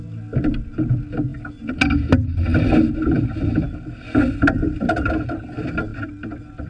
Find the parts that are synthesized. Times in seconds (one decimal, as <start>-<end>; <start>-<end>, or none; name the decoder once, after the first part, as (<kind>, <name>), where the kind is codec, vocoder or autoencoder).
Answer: none